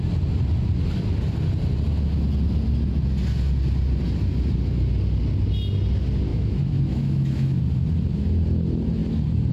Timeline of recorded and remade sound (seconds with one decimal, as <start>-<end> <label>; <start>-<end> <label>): 0.0-6.3 recorded; 6.3-7.6 remade; 7.6-9.5 recorded